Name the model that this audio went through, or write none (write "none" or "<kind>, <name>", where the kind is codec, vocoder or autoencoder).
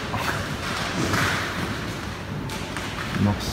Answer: vocoder, BigVGAN v2